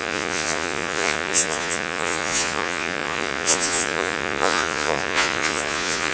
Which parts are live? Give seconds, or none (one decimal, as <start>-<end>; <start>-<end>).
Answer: none